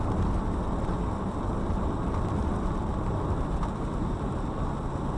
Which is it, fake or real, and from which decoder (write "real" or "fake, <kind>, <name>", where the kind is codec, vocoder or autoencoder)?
real